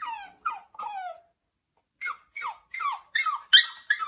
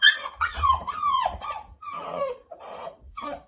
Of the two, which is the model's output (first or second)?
second